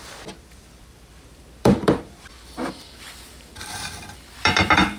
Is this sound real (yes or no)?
no